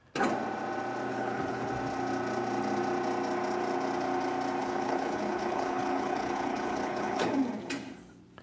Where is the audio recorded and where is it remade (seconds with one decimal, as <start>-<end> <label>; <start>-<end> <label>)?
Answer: 0.0-1.1 recorded; 1.1-1.7 remade; 1.7-4.6 recorded; 4.6-7.3 remade; 7.3-8.4 recorded